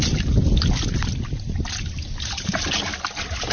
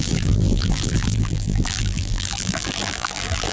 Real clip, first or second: first